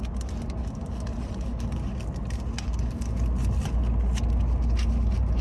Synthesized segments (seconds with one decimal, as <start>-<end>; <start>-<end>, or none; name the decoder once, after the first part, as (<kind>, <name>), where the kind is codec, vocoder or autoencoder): none